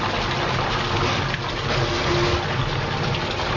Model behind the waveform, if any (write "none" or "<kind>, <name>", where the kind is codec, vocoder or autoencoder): none